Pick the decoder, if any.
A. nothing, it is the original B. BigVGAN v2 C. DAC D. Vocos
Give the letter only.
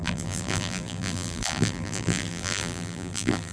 B